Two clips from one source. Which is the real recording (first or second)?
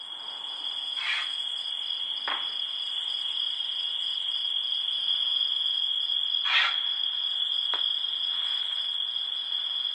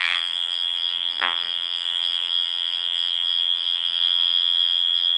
first